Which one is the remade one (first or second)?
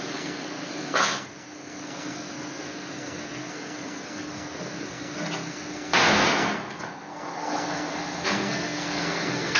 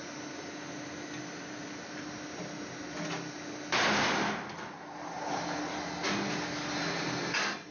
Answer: first